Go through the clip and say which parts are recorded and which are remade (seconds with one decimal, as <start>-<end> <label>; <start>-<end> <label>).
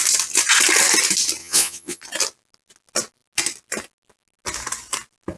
0.0-1.4 recorded; 1.4-2.0 remade; 2.0-5.4 recorded